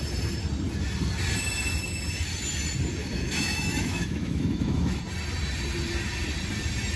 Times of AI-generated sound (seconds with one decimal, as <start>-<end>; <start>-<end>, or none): 3.0-5.0